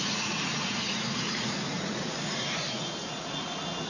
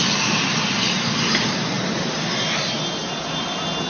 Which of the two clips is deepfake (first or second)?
first